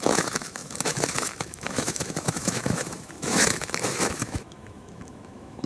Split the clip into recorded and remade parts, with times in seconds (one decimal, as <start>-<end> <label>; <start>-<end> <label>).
0.0-5.7 remade